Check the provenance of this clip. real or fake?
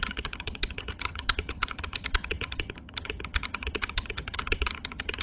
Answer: fake